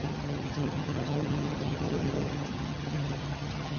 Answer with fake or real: fake